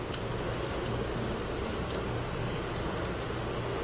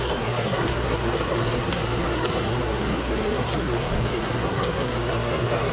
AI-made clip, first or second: second